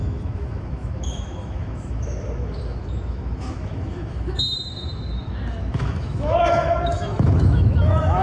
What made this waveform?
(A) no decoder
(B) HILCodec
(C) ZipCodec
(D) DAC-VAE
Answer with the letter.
D